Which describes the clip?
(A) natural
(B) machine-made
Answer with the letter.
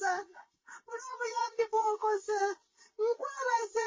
B